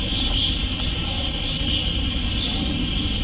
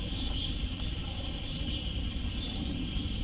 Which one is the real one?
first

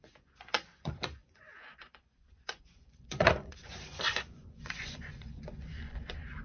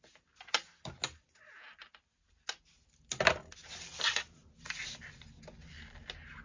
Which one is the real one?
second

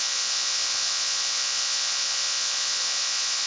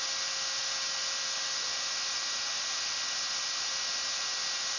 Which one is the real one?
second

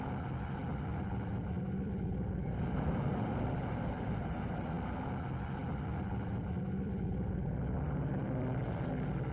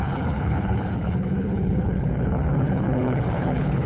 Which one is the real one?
first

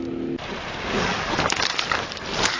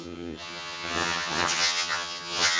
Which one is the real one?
first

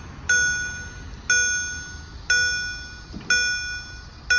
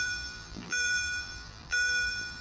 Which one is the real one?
first